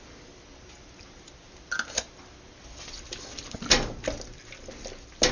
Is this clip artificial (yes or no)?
no